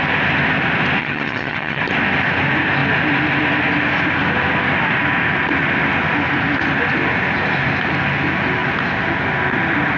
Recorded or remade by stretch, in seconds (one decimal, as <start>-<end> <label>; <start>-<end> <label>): 0.0-1.0 recorded; 1.0-1.8 remade; 1.8-10.0 recorded